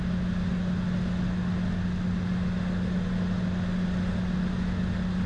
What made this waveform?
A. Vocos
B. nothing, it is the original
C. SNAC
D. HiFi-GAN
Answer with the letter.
B